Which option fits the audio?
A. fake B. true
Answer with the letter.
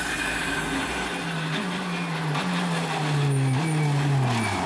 B